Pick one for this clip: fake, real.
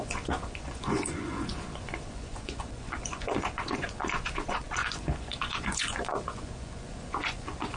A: fake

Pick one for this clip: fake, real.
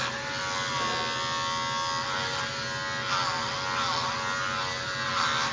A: real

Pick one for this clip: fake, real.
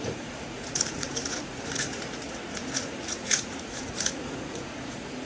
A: fake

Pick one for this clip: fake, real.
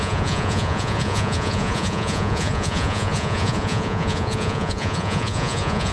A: fake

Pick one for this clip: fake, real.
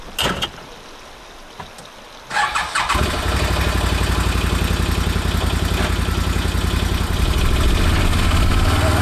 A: real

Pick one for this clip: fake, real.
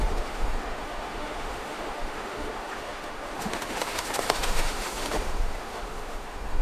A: fake